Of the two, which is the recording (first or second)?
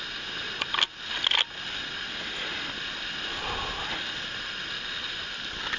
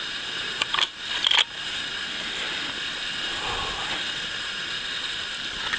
first